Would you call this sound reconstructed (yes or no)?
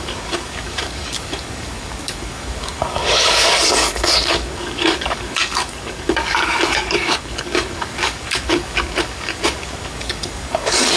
yes